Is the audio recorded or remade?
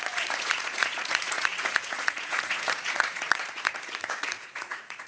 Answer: remade